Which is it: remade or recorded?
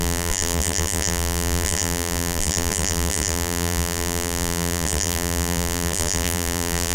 remade